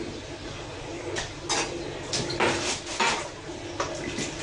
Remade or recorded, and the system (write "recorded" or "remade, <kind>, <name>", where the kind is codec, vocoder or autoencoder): recorded